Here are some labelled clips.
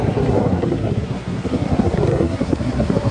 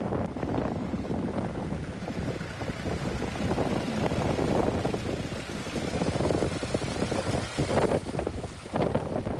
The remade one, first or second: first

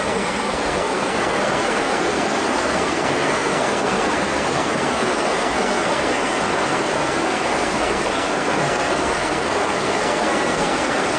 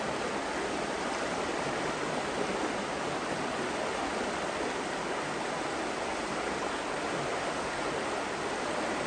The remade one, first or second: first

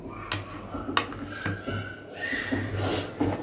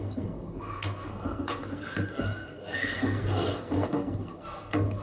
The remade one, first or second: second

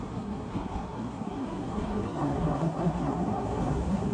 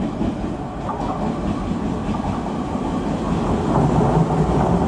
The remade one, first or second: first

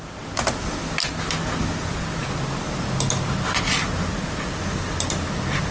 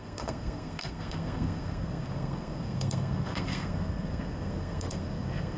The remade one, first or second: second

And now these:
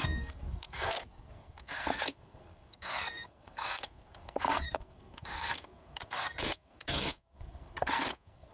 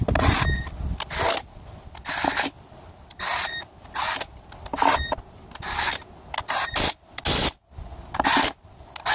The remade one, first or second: first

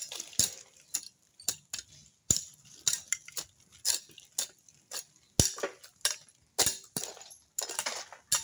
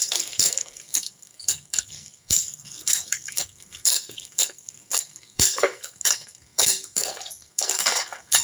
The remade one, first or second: second